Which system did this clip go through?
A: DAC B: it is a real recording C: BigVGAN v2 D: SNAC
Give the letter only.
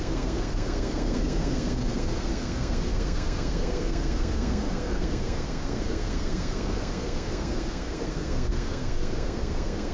D